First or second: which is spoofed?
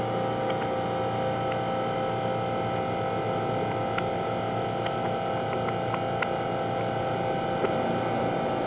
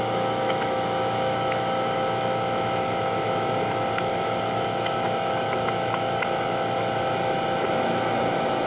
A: second